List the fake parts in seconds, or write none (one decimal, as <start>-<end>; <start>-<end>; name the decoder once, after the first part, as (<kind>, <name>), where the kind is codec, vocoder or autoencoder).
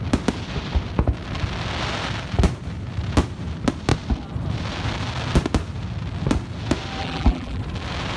7.0-7.6 (vocoder, BigVGAN v2)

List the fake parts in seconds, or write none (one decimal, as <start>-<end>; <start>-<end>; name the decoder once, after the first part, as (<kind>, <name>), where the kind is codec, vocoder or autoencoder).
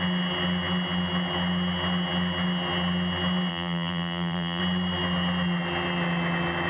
3.5-4.6 (vocoder, BigVGAN v2)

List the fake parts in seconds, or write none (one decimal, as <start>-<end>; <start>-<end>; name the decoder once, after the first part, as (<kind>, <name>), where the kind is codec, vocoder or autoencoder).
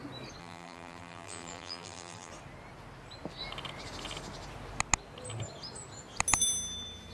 0.4-2.3 (vocoder, BigVGAN v2)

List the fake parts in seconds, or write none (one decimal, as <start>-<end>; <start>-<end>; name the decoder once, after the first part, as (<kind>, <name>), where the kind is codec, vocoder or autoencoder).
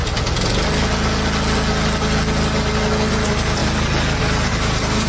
3.1-3.6 (vocoder, BigVGAN v2); 4.2-5.1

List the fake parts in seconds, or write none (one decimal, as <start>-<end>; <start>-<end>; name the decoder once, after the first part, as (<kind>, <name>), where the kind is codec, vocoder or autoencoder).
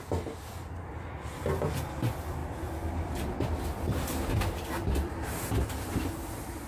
2.4-6.2 (vocoder, BigVGAN v2)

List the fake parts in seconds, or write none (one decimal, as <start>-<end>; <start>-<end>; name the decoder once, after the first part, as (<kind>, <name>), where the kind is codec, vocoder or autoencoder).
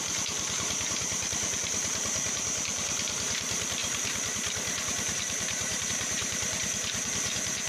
0.0-7.7 (vocoder, BigVGAN v2)